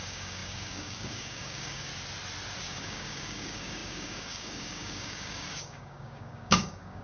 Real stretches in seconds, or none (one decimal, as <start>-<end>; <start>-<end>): 1.9-2.6